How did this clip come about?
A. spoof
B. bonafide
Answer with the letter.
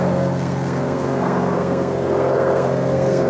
A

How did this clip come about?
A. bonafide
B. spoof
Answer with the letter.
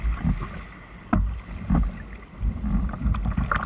A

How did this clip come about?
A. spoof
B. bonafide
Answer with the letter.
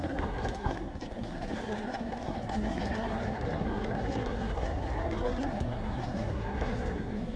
A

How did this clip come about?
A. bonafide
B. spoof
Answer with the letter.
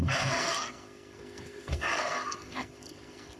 B